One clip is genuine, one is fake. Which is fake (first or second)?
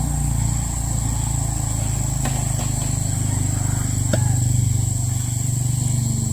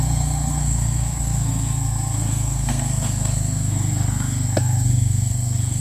second